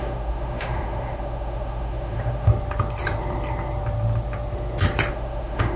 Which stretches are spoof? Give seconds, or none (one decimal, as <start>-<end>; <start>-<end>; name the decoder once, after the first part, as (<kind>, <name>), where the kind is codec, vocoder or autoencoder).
0.0-2.5 (autoencoder, DAC-VAE); 5.1-5.8